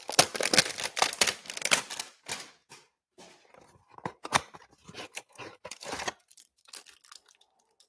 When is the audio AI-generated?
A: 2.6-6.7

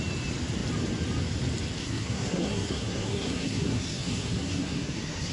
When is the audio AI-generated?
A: 1.8-5.3